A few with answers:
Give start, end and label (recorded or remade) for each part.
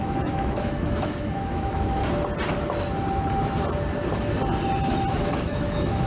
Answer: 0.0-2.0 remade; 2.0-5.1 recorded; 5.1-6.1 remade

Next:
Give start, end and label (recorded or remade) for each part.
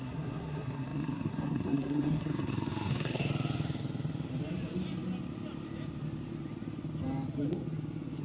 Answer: 0.0-3.2 remade; 3.2-8.2 recorded